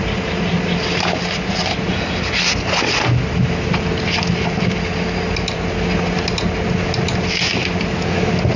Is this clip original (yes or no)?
yes